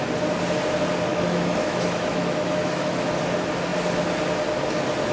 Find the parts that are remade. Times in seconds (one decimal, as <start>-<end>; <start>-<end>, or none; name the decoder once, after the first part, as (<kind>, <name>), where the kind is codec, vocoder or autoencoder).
1.1-3.2 (autoencoder, DAC-VAE)